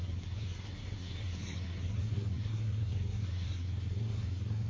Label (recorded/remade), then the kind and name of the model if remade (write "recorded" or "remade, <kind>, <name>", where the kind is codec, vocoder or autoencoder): remade, codec, SNAC